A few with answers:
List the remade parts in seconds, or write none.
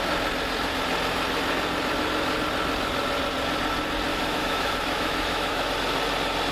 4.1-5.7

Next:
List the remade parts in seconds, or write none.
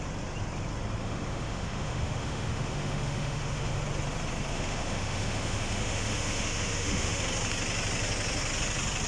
1.0-3.8; 4.5-7.2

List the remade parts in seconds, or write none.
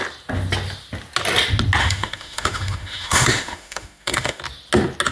1.8-4.4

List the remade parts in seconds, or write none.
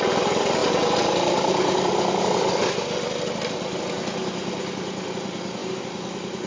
none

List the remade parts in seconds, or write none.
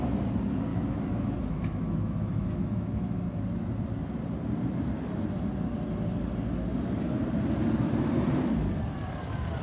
0.7-3.4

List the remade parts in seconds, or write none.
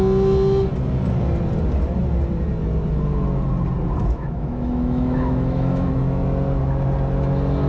4.0-6.2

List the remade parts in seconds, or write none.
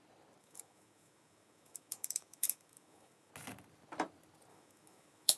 0.4-3.3; 4.5-5.4